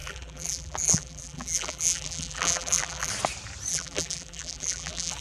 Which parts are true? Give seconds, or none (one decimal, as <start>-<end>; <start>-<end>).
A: 3.1-3.7